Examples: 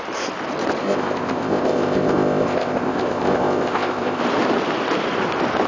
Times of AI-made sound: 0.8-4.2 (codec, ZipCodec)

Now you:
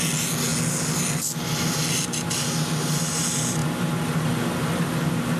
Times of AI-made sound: none

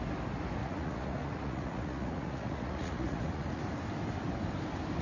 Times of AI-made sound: 0.6-3.6 (vocoder, Vocos)

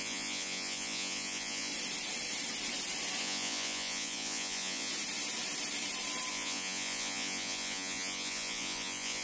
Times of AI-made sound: 0.0-1.7 (vocoder, Vocos); 3.2-4.9; 6.3-9.2

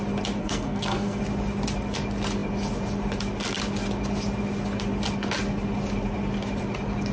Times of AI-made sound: 0.4-1.2 (codec, SNAC)

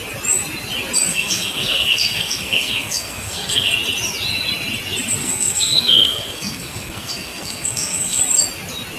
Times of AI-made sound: 1.1-3.7 (codec, SNAC); 5.2-8.2

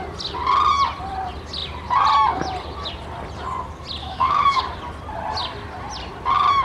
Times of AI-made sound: 4.0-4.6 (autoencoder, DAC-VAE)